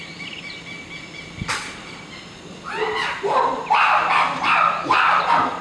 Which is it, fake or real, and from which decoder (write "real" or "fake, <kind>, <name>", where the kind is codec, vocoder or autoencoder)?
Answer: real